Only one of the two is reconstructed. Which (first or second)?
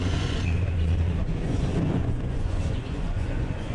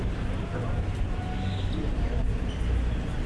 first